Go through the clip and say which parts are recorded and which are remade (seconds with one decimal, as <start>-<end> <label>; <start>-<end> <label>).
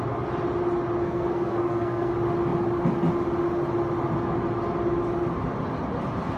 0.0-1.0 recorded; 1.0-2.1 remade; 2.1-6.4 recorded